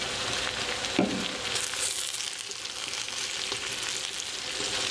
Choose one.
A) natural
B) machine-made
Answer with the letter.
A